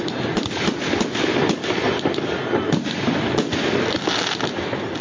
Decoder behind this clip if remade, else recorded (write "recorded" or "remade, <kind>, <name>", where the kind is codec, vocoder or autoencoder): recorded